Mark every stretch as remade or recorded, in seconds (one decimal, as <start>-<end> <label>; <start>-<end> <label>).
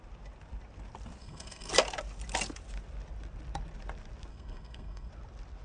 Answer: 0.0-1.2 recorded; 1.2-1.7 remade; 1.7-4.3 recorded; 4.3-5.1 remade; 5.1-5.6 recorded